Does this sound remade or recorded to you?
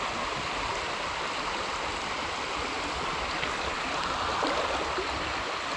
recorded